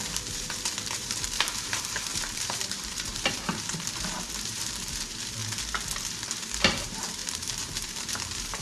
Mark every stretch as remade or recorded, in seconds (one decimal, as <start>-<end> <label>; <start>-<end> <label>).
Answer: 0.0-5.4 remade; 5.4-6.1 recorded; 6.1-8.6 remade